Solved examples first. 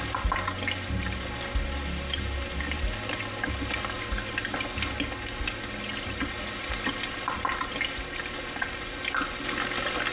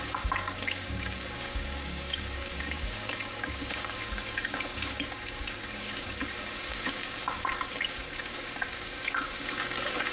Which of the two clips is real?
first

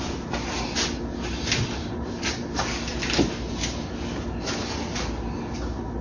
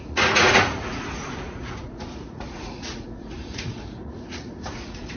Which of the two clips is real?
first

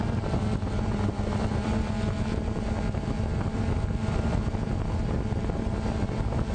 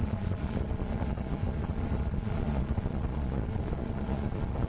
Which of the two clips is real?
first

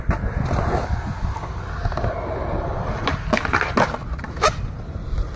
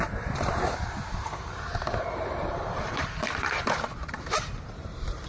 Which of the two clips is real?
first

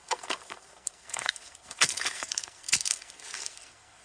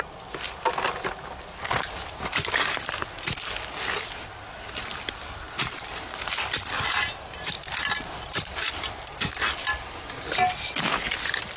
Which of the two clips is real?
second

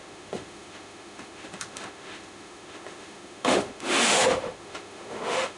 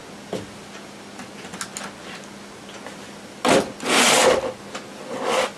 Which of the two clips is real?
second